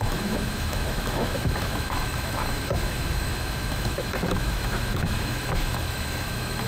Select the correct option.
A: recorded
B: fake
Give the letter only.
B